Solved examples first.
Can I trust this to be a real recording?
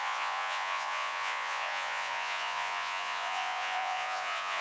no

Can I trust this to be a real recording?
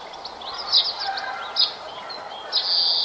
yes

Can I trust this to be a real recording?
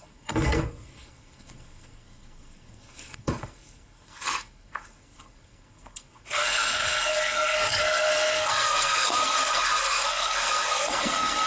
no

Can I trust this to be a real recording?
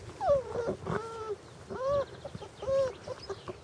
yes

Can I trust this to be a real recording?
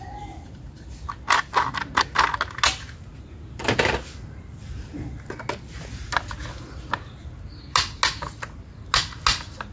yes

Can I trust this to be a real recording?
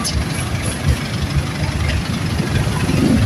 yes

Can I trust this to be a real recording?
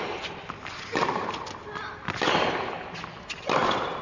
yes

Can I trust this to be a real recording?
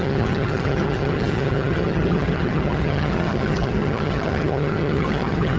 no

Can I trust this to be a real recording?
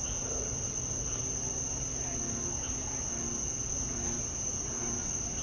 yes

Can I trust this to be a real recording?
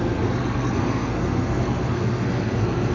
no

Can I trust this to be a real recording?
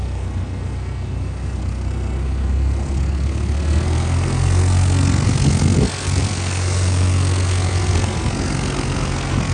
no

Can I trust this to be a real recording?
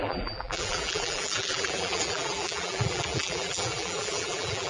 no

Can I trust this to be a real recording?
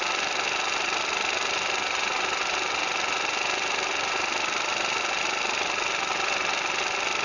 yes